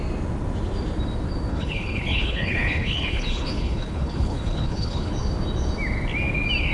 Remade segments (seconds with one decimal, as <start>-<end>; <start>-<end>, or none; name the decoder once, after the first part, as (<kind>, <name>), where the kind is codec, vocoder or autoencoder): 1.5-5.1 (codec, HILCodec)